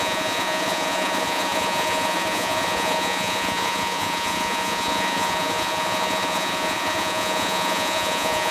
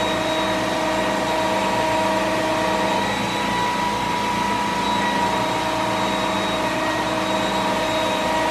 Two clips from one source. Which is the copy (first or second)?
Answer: first